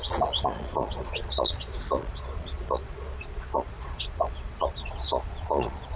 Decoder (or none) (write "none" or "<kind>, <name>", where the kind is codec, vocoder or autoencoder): vocoder, Vocos